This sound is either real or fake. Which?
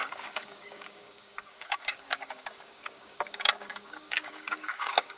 fake